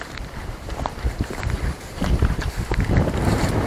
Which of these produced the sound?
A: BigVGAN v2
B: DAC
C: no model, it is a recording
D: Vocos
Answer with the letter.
A